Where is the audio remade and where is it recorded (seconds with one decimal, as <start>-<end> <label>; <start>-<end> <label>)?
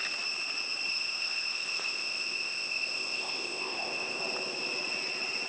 0.0-0.9 recorded; 0.9-4.2 remade; 4.2-5.5 recorded